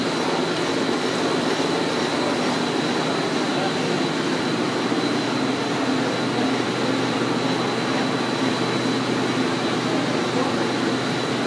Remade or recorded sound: recorded